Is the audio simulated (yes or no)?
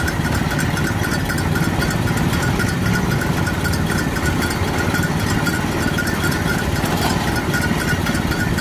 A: no